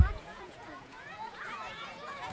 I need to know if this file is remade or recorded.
remade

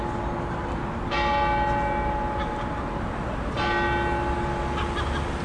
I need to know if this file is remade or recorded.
recorded